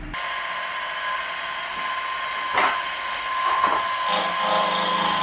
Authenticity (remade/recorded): recorded